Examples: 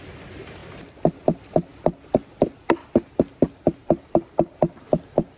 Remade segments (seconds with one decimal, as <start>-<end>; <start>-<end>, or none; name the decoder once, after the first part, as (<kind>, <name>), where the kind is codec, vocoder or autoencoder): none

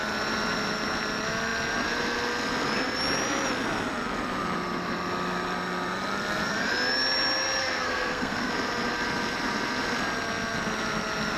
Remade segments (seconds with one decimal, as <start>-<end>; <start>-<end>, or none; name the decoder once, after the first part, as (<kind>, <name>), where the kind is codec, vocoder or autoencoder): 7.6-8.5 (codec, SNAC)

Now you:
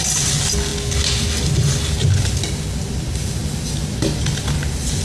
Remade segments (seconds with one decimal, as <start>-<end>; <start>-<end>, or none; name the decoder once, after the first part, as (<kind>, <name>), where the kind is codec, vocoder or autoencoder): none

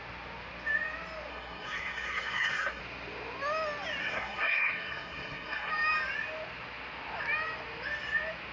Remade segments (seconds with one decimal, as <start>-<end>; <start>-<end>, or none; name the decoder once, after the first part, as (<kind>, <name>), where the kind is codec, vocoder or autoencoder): 1.3-2.8 (codec, SNAC); 4.0-5.7

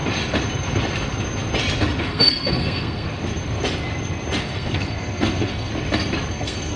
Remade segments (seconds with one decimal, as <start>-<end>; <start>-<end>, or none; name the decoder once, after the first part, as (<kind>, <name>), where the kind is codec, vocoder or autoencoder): 2.0-3.1 (codec, SNAC); 4.4-5.7; 6.3-6.8

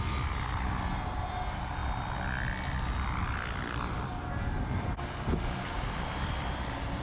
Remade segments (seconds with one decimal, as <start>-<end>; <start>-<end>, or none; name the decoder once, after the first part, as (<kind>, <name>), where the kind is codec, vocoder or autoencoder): none